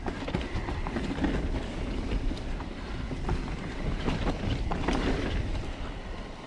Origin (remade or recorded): recorded